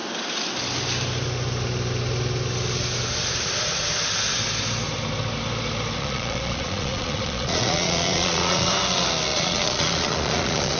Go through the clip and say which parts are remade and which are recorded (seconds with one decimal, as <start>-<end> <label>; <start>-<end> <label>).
0.0-6.0 recorded; 6.0-8.7 remade; 8.7-9.3 recorded; 9.3-10.8 remade